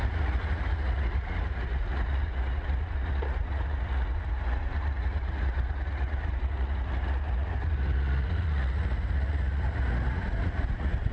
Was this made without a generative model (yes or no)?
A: no